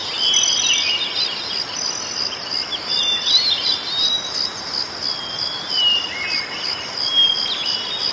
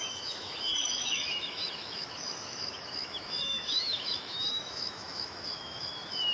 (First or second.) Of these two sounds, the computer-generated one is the second